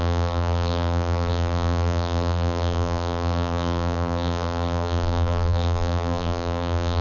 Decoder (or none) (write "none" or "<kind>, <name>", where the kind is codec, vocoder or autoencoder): vocoder, BigVGAN v2